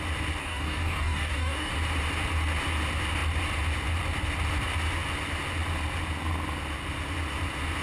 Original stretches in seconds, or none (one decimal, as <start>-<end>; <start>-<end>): 0.0-0.4; 1.7-7.8